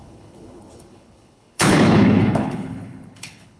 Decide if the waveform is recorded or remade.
remade